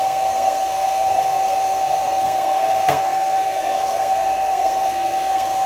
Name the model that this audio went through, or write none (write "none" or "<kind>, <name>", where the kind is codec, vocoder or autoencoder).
codec, SNAC